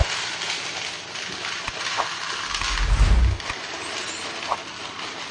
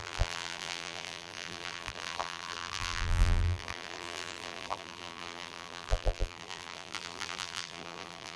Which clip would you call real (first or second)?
first